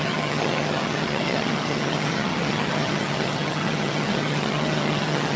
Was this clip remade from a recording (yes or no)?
yes